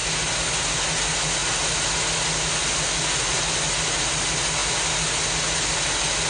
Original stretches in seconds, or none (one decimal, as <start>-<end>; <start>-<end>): 0.0-6.3

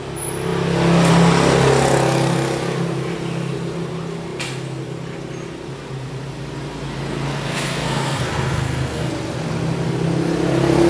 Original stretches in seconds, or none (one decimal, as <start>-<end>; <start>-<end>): 0.0-7.3; 9.1-10.9

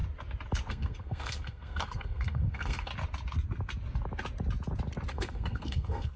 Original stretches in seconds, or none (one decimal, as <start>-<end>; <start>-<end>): 0.0-0.7; 2.9-5.1